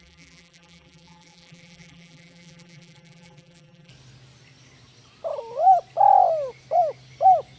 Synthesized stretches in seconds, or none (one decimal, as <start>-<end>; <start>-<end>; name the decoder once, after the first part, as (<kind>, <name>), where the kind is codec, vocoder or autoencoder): 0.0-3.9 (vocoder, BigVGAN v2)